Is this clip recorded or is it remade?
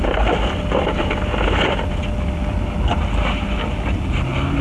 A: recorded